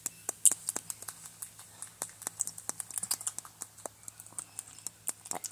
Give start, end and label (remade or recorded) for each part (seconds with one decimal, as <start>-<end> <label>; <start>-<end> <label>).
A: 0.0-5.5 recorded